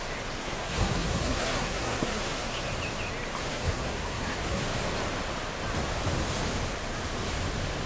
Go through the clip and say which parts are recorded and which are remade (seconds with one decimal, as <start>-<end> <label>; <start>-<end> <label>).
0.0-0.4 recorded; 0.4-2.7 remade; 2.7-3.5 recorded; 3.5-4.6 remade; 4.6-7.9 recorded